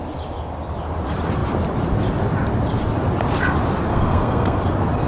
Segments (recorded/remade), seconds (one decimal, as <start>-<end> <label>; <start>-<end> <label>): 0.0-3.9 recorded; 3.9-4.6 remade; 4.6-5.1 recorded

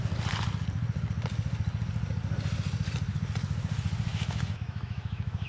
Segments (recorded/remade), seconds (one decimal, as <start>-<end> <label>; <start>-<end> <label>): 0.0-4.1 recorded; 4.1-5.5 remade

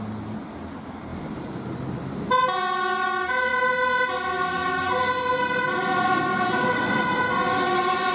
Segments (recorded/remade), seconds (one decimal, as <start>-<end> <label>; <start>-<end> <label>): 0.0-8.1 recorded

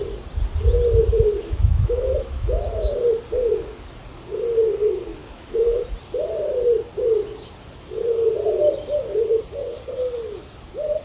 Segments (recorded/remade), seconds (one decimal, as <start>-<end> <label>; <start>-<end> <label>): 0.0-1.4 recorded; 1.4-2.6 remade; 2.6-5.2 recorded; 5.2-5.8 remade; 5.8-11.0 recorded